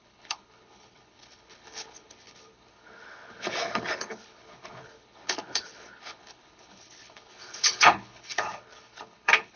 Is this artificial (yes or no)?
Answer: yes